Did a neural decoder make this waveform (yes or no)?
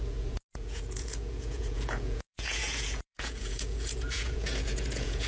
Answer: yes